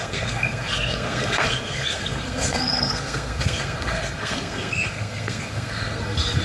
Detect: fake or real fake